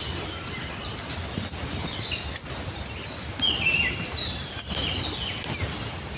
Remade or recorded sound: recorded